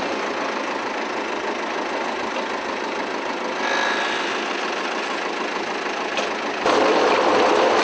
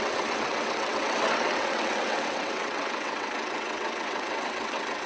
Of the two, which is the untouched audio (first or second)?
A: first